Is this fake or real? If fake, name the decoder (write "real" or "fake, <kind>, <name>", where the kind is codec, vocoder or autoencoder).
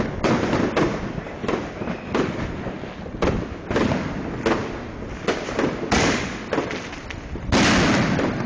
real